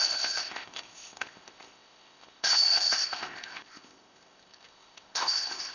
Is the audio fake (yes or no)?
yes